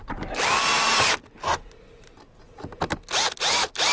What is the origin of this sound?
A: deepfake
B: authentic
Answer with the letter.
B